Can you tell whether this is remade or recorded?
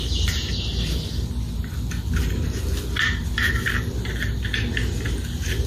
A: recorded